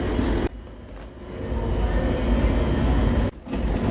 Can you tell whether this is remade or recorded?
recorded